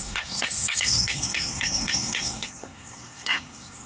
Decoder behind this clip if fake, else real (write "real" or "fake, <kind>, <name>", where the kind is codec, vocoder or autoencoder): fake, codec, SNAC